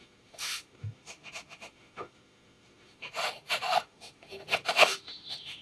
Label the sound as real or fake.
fake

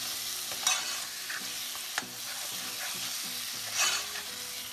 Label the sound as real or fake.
real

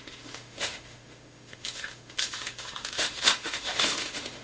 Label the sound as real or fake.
fake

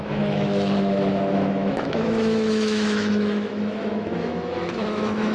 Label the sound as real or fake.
fake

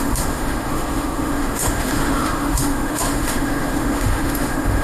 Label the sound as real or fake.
fake